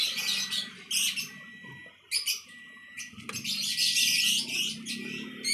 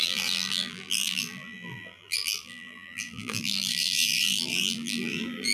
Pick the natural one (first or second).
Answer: first